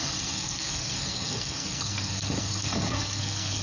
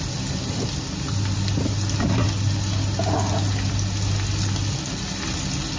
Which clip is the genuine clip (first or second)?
second